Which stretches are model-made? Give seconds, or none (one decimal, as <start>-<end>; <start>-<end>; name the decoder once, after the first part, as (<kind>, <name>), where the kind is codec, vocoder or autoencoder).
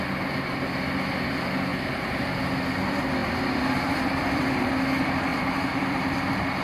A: 1.7-2.4 (vocoder, BigVGAN v2); 3.2-4.7; 5.3-6.1